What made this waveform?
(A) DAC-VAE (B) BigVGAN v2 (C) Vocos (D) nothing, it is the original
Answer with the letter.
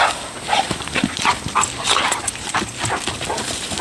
D